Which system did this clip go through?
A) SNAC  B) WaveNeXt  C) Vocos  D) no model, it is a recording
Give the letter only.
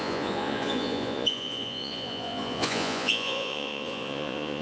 C